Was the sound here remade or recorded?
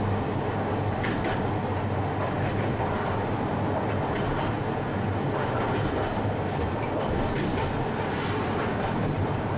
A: recorded